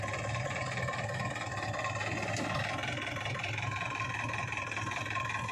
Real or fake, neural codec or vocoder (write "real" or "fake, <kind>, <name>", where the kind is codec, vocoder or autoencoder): real